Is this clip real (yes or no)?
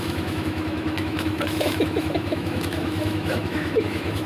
no